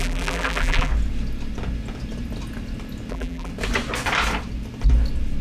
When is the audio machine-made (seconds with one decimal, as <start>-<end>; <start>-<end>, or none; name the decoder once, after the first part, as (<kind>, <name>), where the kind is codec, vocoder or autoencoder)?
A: 0.0-0.9 (vocoder, BigVGAN v2); 3.1-3.5